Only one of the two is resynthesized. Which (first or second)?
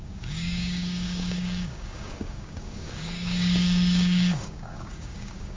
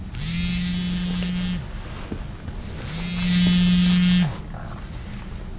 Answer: first